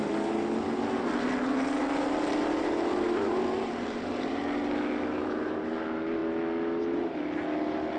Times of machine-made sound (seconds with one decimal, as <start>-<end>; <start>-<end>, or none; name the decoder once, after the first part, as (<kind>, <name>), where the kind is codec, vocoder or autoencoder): 1.8-4.4 (vocoder, BigVGAN v2)